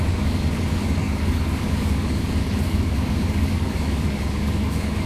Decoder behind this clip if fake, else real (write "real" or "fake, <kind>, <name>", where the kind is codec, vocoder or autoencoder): fake, codec, DAC